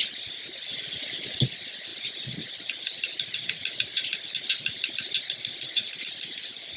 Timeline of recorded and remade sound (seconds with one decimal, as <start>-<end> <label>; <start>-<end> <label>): 0.0-0.7 recorded; 0.7-1.4 remade; 1.4-6.8 recorded